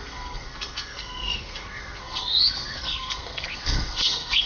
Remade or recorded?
remade